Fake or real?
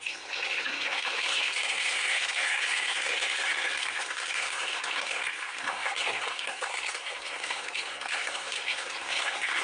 fake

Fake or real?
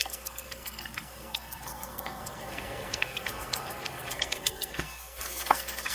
fake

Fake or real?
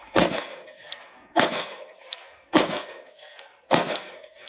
fake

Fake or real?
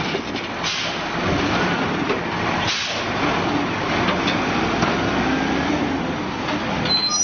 real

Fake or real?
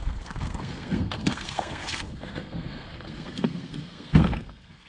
fake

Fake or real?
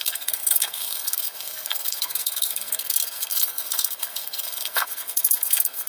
fake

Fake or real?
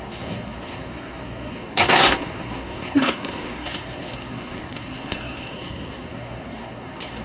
fake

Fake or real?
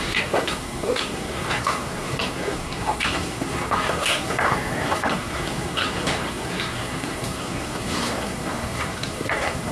fake